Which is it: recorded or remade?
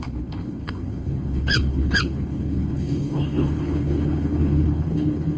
remade